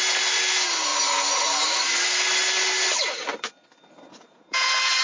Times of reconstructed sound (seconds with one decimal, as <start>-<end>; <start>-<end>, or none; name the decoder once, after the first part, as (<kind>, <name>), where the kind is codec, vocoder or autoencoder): 4.1-5.0 (vocoder, Vocos)